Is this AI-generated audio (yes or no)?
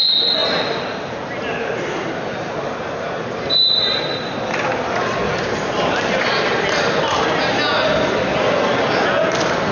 no